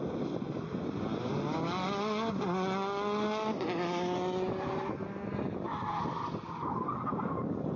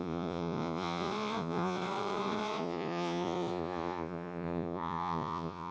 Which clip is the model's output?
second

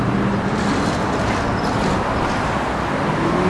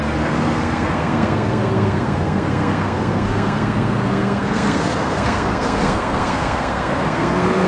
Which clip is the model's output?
second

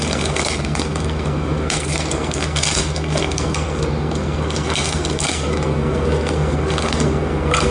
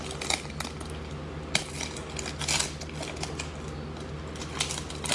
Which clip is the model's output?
first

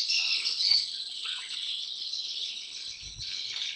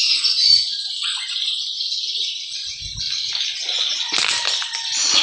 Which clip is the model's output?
first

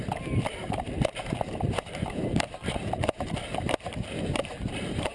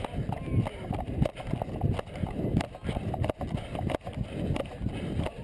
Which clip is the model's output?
first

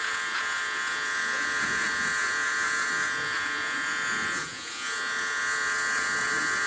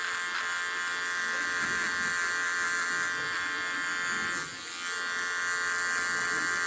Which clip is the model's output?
first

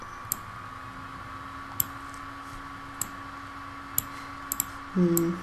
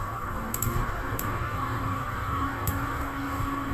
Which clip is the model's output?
second